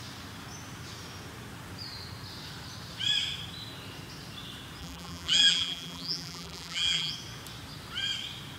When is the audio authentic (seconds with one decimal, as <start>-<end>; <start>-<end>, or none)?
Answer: 0.0-4.8; 7.1-8.6